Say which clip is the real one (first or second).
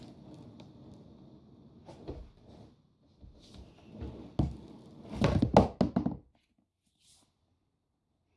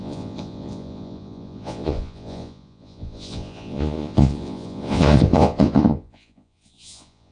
first